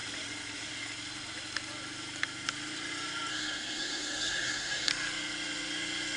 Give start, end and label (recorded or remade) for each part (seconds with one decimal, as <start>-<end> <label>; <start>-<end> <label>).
0.0-3.3 recorded; 3.3-4.9 remade; 4.9-6.2 recorded